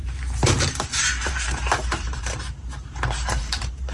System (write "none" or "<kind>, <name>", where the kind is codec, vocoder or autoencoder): vocoder, BigVGAN v2